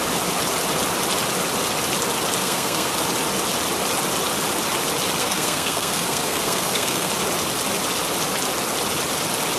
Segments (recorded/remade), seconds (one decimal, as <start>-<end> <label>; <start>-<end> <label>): 0.0-2.4 recorded; 2.4-2.9 remade; 2.9-5.2 recorded; 5.2-7.1 remade; 7.1-9.6 recorded